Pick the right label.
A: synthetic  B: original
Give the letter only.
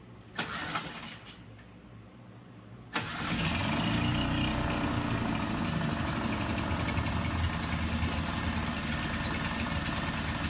B